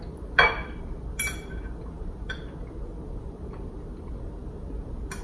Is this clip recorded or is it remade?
recorded